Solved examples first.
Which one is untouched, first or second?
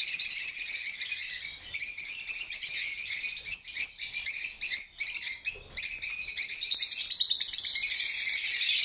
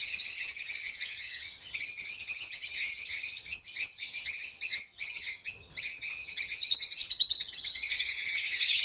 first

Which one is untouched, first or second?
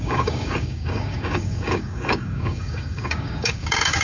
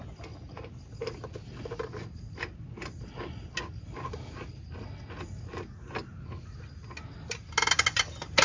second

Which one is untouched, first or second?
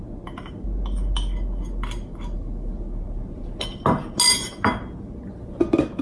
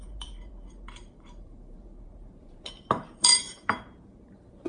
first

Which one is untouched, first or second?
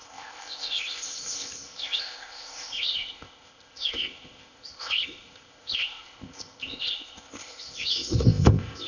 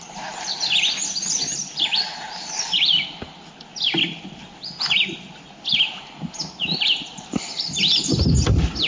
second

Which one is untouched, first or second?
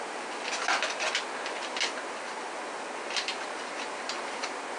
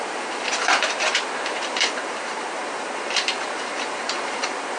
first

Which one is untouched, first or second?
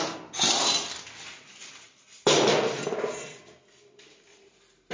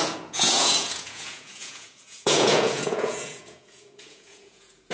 first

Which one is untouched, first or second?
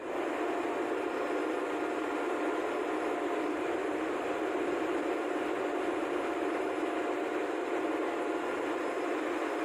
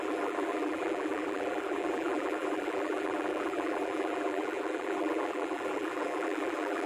first